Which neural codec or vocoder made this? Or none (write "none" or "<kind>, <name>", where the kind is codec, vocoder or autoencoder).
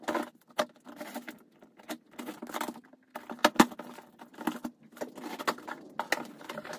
none